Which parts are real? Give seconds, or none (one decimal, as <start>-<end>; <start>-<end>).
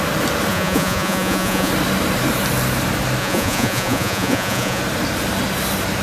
0.0-0.5; 1.7-3.2; 4.8-6.0